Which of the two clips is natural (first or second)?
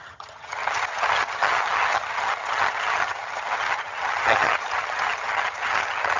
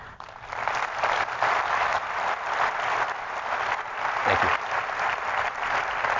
second